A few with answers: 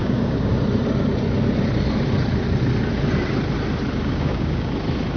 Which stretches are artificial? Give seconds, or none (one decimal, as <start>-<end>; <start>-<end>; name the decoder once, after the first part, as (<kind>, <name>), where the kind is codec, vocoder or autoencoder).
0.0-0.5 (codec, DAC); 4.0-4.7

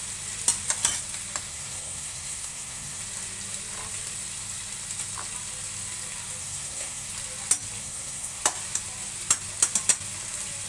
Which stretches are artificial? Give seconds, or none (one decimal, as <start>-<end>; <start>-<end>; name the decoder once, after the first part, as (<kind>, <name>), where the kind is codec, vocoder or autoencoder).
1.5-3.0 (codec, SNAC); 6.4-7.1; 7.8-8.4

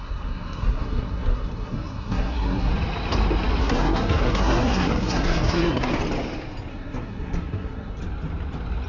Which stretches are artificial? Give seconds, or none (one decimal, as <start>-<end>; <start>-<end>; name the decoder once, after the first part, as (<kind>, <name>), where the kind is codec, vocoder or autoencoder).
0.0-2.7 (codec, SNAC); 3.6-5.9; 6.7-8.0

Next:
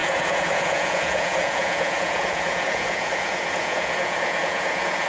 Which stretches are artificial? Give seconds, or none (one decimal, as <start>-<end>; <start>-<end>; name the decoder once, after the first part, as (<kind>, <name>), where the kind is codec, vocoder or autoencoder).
0.0-5.1 (vocoder, Vocos)